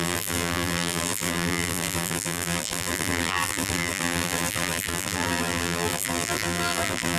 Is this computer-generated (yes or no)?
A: yes